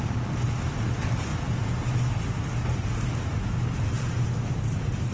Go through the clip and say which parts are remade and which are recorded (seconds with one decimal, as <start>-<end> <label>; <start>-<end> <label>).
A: 0.0-5.1 recorded